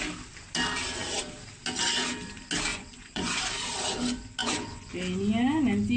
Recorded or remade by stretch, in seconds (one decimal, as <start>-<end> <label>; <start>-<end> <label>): 0.0-2.7 recorded; 2.7-3.4 remade; 3.4-4.4 recorded; 4.4-4.9 remade; 4.9-6.0 recorded